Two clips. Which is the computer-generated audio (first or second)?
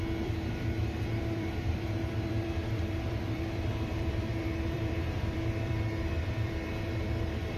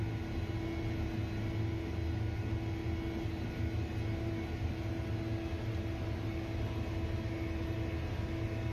first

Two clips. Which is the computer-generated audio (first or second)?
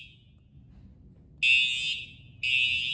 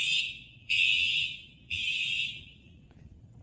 second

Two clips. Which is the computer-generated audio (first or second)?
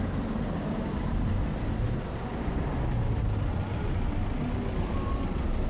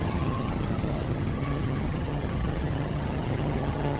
second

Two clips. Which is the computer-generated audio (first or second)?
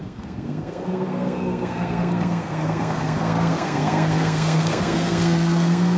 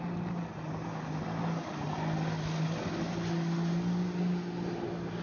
first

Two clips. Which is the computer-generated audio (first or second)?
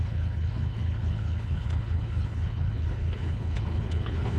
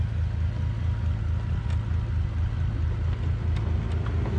first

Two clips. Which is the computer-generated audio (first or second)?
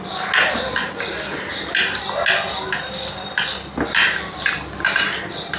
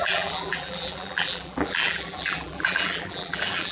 second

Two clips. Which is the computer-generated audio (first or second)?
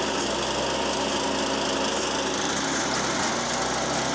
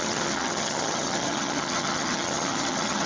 second